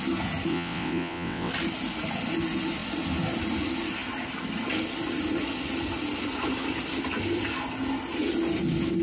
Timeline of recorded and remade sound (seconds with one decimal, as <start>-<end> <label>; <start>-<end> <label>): 0.0-0.5 recorded; 0.5-1.5 remade; 1.5-9.0 recorded